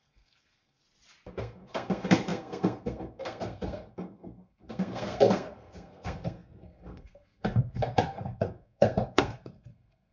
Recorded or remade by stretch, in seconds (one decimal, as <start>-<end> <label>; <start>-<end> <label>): 0.0-0.8 remade; 0.8-1.4 recorded; 1.4-10.1 remade